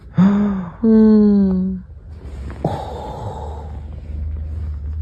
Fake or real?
real